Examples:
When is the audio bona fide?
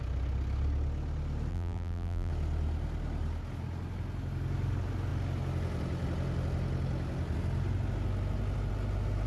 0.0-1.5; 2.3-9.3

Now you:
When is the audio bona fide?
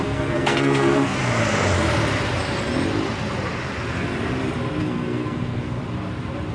1.2-4.8; 5.8-6.5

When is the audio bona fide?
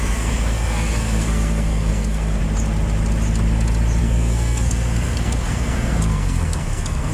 2.4-4.0